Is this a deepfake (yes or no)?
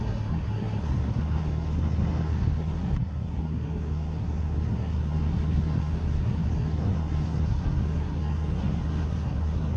yes